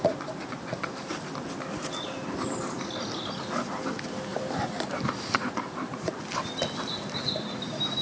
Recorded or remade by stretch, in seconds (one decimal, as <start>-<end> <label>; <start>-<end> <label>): 0.0-4.3 recorded; 4.3-6.2 remade; 6.2-8.0 recorded